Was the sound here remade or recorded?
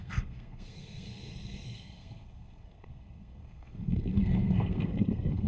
remade